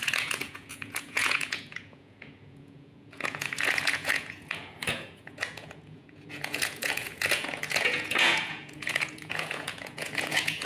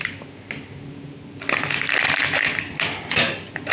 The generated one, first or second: first